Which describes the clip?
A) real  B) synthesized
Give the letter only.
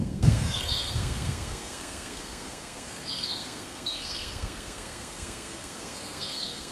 B